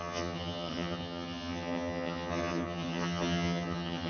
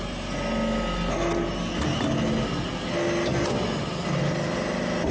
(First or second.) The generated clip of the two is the first